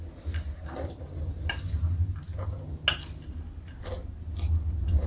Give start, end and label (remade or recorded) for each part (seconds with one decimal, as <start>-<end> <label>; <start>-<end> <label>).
0.0-5.1 recorded